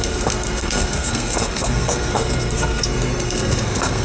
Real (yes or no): no